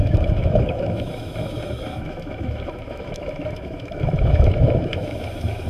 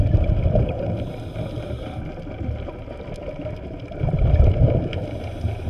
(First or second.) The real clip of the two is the second